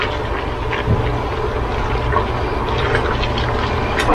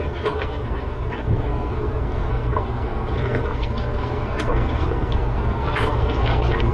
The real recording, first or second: first